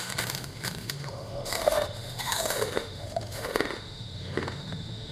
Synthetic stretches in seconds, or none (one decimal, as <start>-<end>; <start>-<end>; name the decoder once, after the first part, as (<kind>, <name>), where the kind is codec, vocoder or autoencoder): 0.0-5.1 (autoencoder, DAC-VAE)